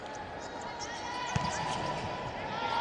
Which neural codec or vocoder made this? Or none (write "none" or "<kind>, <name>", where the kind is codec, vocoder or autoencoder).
none